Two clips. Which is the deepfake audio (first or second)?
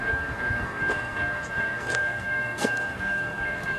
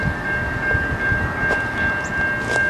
first